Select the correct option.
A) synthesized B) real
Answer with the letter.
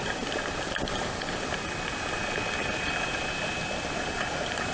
B